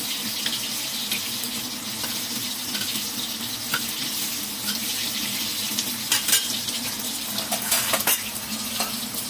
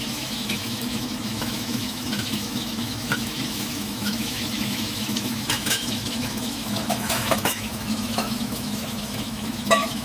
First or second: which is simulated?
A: second